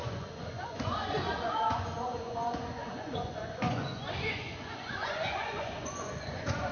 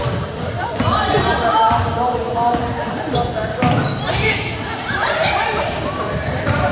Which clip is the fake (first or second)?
first